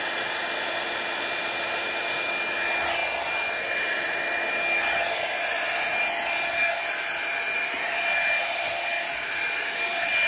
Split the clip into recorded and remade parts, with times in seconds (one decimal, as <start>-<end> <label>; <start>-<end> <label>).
0.0-10.3 recorded